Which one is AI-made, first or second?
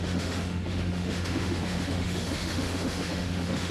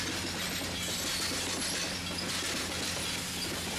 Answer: first